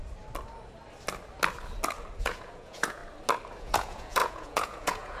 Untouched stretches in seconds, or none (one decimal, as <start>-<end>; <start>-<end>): 0.0-2.2; 3.0-3.6